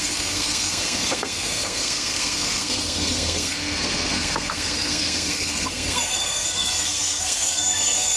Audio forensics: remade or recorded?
remade